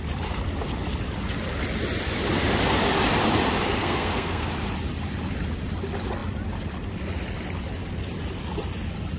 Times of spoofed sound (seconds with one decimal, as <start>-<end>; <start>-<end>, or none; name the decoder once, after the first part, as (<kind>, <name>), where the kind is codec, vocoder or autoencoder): 3.8-4.5 (codec, SNAC)